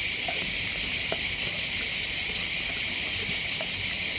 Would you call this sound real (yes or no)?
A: yes